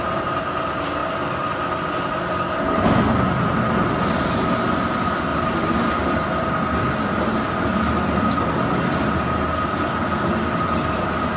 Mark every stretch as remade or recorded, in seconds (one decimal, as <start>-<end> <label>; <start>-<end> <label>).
0.0-11.4 recorded